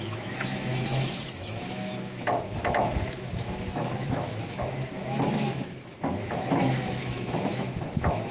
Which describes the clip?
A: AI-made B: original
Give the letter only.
A